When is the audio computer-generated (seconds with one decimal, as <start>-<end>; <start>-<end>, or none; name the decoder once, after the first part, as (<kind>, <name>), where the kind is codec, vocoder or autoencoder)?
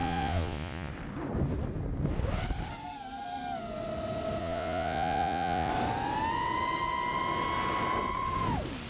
0.0-0.9 (vocoder, Vocos); 4.4-5.7